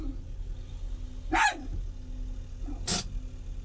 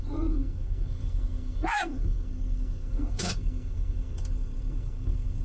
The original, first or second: first